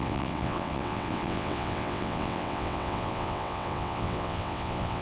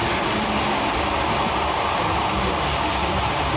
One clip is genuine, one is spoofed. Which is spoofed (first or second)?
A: first